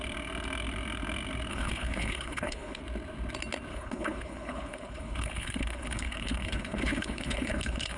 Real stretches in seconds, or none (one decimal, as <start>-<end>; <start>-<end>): 0.0-1.5; 2.8-3.7